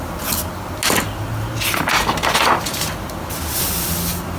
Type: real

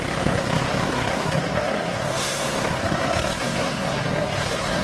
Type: fake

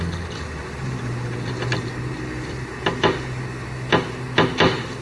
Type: real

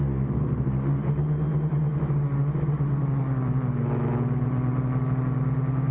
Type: real